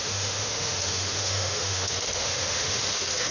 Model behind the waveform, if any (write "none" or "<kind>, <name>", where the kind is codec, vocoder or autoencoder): autoencoder, DAC-VAE